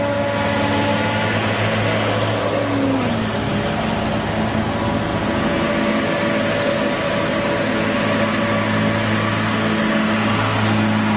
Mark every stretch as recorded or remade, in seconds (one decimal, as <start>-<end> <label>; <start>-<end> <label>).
0.0-5.1 recorded; 5.1-5.7 remade; 5.7-11.2 recorded